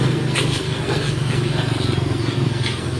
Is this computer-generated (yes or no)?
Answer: yes